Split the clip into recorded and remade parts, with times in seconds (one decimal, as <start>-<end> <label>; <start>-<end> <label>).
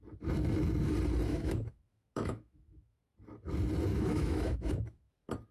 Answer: 0.0-1.3 recorded; 1.3-3.0 remade; 3.0-3.9 recorded; 3.9-5.1 remade; 5.1-5.5 recorded